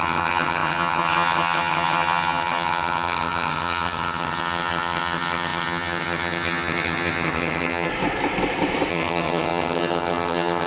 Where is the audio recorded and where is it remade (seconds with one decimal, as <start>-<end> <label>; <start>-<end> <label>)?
0.0-7.9 remade; 7.9-8.9 recorded; 8.9-10.7 remade